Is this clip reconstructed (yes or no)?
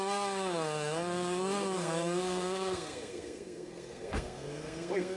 yes